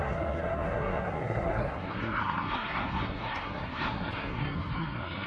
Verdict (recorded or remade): remade